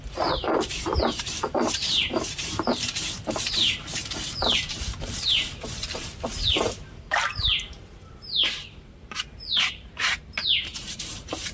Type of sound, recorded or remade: remade